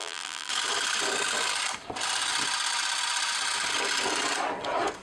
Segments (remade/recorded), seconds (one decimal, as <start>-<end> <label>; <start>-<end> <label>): 0.0-0.5 remade; 0.5-5.0 recorded